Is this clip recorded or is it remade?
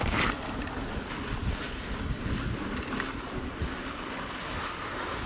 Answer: recorded